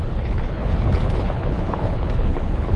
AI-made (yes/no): yes